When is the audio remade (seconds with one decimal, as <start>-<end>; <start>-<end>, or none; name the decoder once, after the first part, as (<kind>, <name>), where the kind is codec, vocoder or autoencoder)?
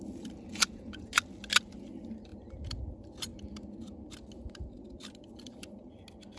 0.5-1.1 (vocoder, Vocos)